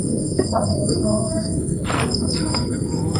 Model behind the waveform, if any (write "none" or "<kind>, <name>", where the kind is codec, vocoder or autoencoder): codec, SNAC